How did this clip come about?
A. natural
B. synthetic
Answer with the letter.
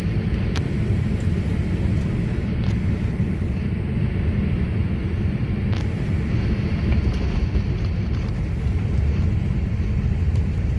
A